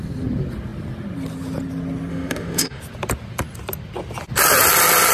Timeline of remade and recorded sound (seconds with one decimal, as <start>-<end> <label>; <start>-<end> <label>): 0.0-2.1 recorded; 2.1-2.8 remade; 2.8-5.1 recorded